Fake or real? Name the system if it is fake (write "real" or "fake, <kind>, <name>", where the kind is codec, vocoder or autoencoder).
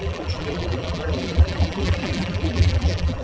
fake, vocoder, BigVGAN v2